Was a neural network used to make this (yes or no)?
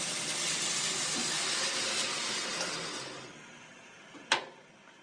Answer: no